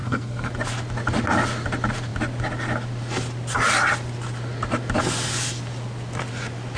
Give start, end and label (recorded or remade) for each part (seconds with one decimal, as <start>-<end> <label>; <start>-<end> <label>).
0.0-0.5 remade; 0.5-6.8 recorded